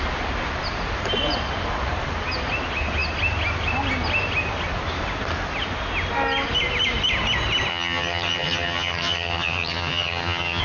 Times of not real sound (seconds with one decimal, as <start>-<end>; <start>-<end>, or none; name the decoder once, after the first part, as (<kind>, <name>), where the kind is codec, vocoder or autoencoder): 7.7-10.6 (vocoder, HiFi-GAN)